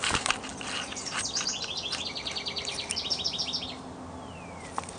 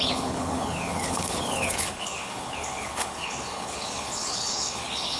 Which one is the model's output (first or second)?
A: second